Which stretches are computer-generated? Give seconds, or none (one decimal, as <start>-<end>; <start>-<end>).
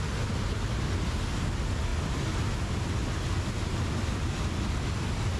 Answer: none